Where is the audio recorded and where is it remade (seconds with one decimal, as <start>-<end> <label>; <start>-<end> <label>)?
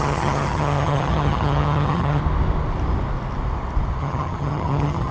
0.0-2.2 remade; 2.2-4.0 recorded; 4.0-5.1 remade